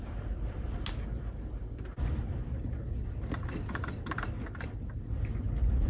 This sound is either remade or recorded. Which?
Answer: recorded